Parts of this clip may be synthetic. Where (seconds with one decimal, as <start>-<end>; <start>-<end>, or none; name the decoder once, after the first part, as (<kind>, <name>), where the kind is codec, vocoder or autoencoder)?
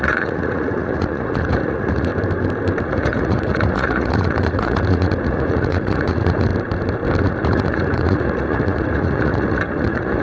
0.0-2.1 (vocoder, Vocos); 2.8-6.5; 7.2-10.2